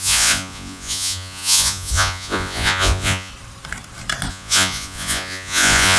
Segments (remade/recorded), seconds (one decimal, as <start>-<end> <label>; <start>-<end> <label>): 0.0-3.3 remade; 3.3-4.3 recorded; 4.3-6.0 remade